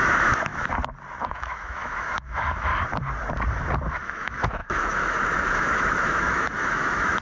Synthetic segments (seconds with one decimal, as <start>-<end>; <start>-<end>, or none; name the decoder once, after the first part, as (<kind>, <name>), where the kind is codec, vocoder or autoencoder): 0.0-0.5 (autoencoder, DAC-VAE); 1.3-2.7; 3.9-7.2